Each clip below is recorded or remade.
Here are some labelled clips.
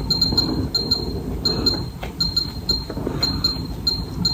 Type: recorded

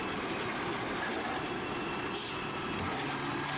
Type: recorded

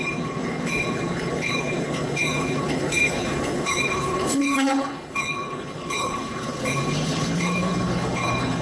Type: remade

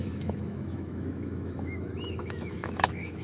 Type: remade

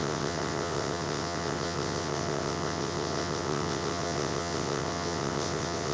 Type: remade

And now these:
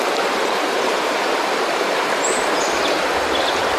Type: remade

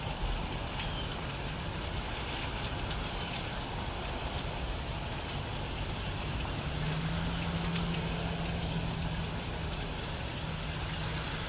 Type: recorded